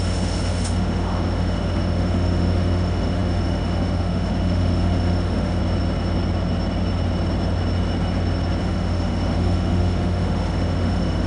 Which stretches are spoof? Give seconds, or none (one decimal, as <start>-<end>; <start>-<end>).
0.0-5.6; 8.6-11.3